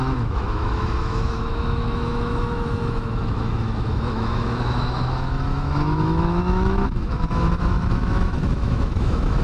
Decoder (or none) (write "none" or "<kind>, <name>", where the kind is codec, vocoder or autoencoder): autoencoder, DAC-VAE